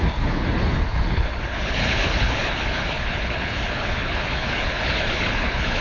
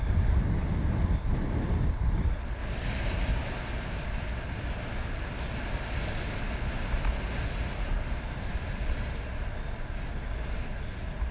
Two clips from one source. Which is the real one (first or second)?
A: second